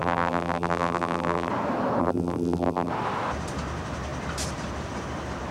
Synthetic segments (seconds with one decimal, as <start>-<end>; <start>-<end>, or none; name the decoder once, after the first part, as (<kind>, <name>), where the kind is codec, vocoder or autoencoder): 0.0-1.5 (vocoder, BigVGAN v2); 2.0-2.9